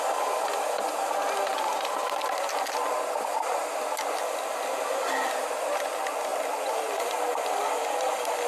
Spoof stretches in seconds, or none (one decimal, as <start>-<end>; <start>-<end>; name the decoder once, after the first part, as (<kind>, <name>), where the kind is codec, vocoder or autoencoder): 1.5-2.9 (vocoder, BigVGAN v2); 6.3-7.6